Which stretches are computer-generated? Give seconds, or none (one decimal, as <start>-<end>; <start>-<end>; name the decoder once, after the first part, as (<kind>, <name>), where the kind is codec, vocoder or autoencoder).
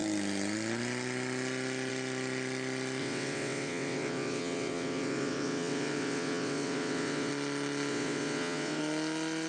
3.0-7.3 (vocoder, WaveNeXt); 7.9-8.8